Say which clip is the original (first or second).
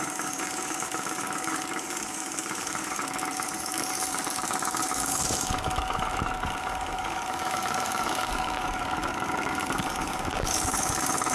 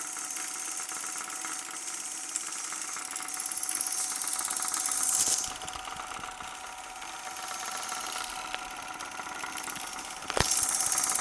second